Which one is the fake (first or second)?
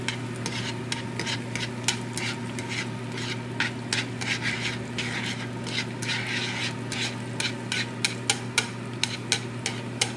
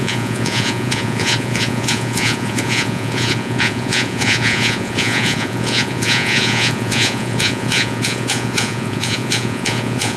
second